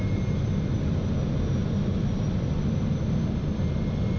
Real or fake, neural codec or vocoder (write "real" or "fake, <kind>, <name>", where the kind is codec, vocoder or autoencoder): real